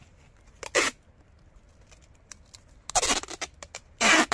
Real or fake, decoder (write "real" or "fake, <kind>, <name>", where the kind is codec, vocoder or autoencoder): real